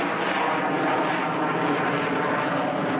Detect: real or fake real